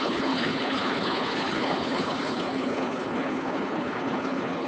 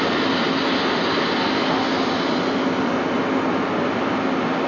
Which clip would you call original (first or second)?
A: second